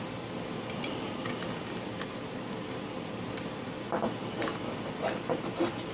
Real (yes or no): yes